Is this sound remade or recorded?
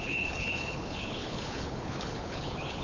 remade